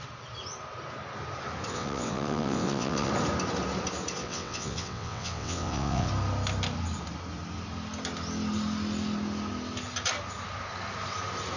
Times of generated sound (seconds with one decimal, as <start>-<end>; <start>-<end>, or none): 1.7-3.1; 4.2-6.1

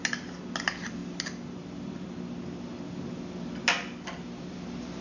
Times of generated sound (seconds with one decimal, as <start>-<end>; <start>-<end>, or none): none

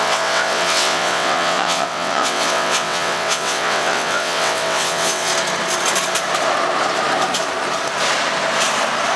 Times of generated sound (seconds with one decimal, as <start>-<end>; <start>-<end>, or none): 0.0-5.3

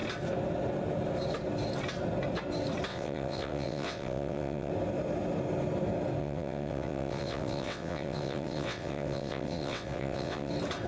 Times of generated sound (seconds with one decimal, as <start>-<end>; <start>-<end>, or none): 2.9-4.7; 6.2-10.5